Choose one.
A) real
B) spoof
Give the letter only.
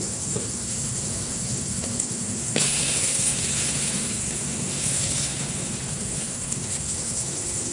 B